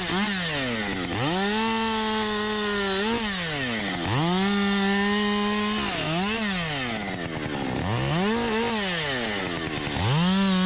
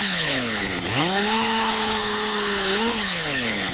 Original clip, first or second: first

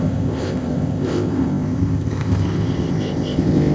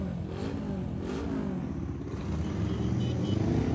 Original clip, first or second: second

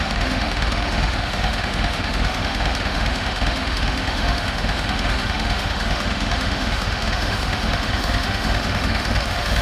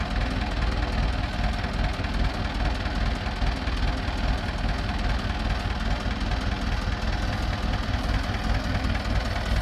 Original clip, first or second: second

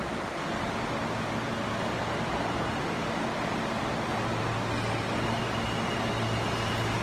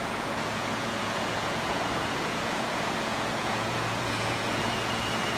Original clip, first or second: first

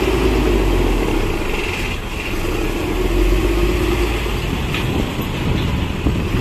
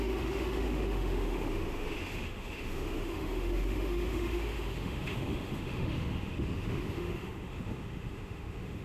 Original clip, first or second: first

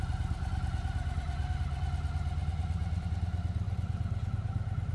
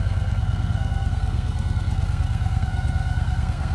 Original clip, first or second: first